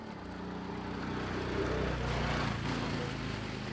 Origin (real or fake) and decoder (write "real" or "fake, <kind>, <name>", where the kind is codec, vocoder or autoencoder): real